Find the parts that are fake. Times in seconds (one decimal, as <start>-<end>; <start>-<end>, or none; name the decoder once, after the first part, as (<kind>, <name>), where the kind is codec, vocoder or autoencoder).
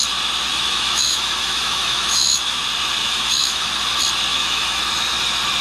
0.5-2.6 (autoencoder, DAC-VAE); 3.0-3.7; 4.3-4.8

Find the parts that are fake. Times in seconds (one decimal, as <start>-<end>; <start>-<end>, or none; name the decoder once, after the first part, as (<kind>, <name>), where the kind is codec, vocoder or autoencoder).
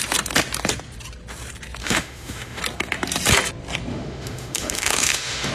1.8-2.6 (autoencoder, DAC-VAE); 3.9-5.5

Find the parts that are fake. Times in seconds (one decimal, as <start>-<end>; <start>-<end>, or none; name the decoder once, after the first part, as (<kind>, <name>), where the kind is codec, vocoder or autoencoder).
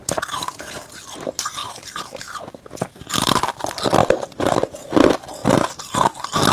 none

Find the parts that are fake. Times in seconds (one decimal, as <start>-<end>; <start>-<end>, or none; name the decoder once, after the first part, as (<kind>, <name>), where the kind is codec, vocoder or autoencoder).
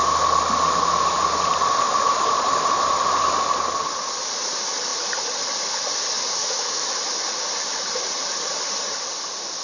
6.4-7.0 (autoencoder, DAC-VAE)